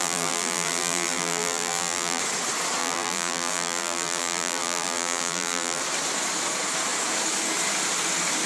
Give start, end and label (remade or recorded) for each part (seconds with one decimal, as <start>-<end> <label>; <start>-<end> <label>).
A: 0.0-2.2 remade; 2.2-2.8 recorded; 2.8-5.8 remade; 5.8-8.5 recorded